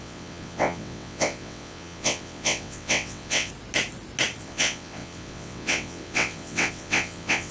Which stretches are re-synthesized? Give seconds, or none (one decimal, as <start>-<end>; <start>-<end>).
0.0-3.5; 4.4-7.5